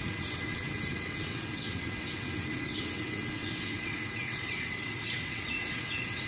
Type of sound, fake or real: fake